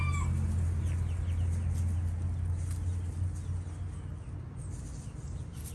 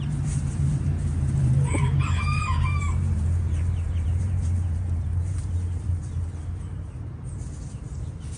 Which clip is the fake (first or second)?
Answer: second